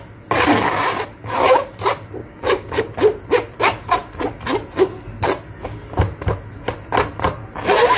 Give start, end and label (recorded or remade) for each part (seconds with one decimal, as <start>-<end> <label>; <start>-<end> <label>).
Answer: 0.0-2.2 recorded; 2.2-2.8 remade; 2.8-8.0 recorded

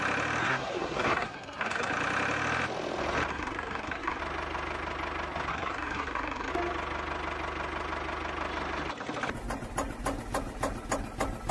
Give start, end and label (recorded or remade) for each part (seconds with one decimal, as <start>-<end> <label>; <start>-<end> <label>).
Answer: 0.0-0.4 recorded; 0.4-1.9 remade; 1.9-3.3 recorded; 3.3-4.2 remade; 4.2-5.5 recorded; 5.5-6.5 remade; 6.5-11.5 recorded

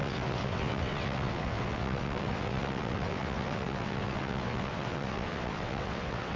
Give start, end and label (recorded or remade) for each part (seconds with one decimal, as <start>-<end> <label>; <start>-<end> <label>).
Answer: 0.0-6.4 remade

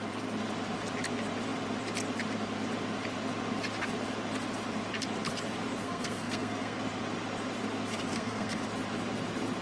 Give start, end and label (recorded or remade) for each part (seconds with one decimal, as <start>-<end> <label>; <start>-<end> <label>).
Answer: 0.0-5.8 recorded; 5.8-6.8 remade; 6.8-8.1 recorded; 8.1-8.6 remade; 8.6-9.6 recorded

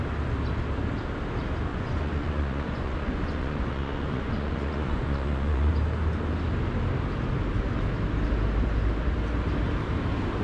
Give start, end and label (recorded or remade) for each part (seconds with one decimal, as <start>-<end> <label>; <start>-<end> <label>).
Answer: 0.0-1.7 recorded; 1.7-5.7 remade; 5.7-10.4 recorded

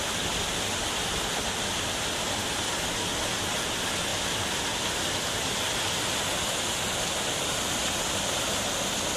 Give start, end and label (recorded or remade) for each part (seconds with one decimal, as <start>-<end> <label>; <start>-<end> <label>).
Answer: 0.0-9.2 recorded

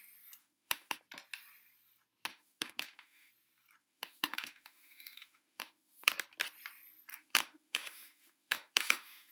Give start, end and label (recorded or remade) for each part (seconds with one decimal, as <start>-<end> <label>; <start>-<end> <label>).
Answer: 0.0-0.4 recorded; 0.4-1.0 remade; 1.0-2.3 recorded; 2.3-3.3 remade; 3.3-3.8 recorded; 3.8-6.1 remade; 6.1-7.1 recorded; 7.1-9.3 remade